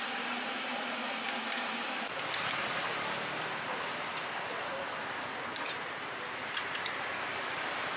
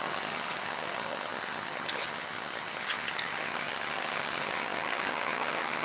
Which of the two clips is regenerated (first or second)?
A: second